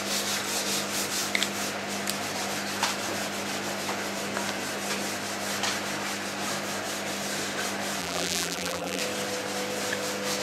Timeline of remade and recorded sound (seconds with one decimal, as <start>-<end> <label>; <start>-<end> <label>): 0.0-8.0 recorded; 8.0-9.0 remade; 9.0-10.4 recorded